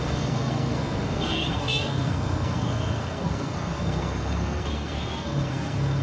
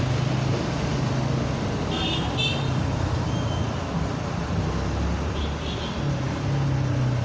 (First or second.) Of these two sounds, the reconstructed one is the first